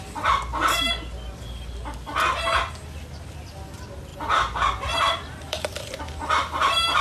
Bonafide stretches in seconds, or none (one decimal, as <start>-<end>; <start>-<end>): 0.0-4.1; 6.0-7.0